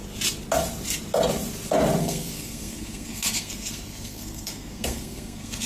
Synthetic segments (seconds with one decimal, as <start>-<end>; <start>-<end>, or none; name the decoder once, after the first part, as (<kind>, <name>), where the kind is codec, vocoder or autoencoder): 2.0-5.7 (codec, SNAC)